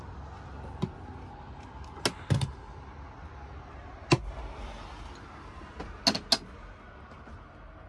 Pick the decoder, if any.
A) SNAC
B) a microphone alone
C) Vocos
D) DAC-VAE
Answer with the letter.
B